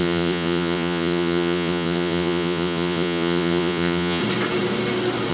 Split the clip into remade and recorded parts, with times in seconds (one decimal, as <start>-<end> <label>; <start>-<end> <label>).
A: 0.0-4.2 remade; 4.2-5.3 recorded